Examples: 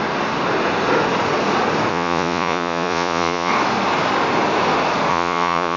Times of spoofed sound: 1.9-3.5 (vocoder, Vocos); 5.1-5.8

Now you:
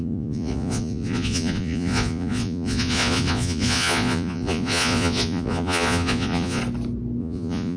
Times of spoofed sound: 0.0-6.6 (vocoder, Vocos); 7.2-7.8

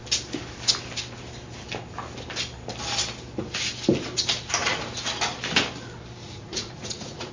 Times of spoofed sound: 6.2-7.3 (vocoder, Vocos)

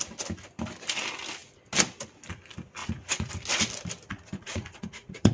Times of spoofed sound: 2.8-3.3 (vocoder, Vocos); 4.1-5.3